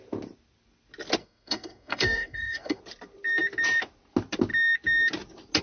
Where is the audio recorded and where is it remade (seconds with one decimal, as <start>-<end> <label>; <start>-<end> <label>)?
0.0-1.2 recorded; 1.2-2.8 remade; 2.8-5.6 recorded